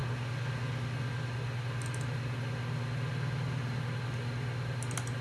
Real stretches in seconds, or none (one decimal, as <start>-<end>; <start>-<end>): 0.0-5.2